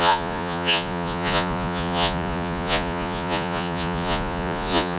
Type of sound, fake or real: fake